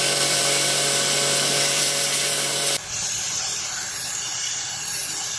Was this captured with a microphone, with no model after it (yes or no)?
no